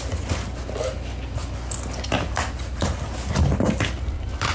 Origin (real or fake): real